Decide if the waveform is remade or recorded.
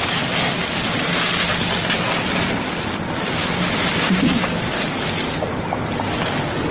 recorded